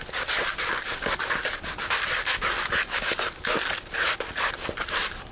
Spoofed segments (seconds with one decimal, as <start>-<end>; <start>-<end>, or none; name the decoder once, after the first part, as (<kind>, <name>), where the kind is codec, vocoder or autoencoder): none